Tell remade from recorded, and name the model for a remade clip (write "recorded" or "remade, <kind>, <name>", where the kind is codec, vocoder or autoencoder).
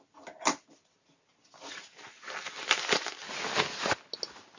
recorded